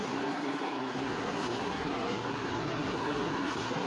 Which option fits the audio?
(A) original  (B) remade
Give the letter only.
B